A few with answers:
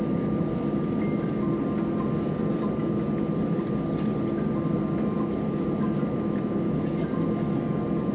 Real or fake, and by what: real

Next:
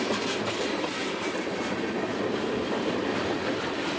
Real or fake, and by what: real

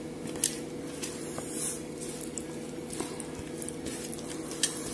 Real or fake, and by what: real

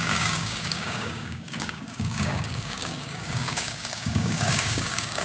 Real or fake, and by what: fake, codec, DAC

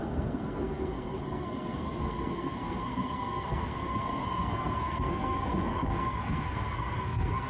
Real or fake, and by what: fake, codec, SNAC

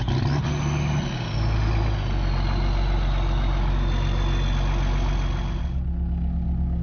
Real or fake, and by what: real